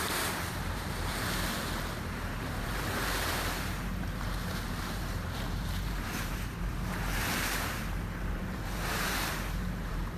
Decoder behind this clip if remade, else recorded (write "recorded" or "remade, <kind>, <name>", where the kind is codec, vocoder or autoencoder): remade, vocoder, BigVGAN v2